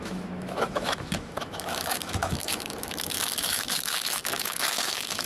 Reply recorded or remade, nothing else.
remade